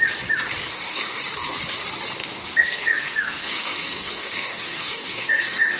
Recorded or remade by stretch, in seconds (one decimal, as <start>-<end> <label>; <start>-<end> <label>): 0.0-0.6 recorded; 0.6-1.2 remade; 1.2-2.2 recorded; 2.2-5.8 remade